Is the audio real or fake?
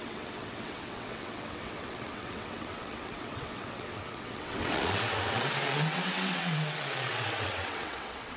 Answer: fake